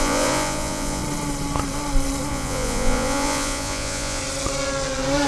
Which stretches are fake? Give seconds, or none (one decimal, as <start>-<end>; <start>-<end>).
0.0-1.0; 2.3-4.2